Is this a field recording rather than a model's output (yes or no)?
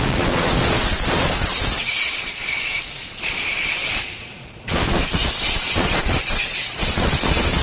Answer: no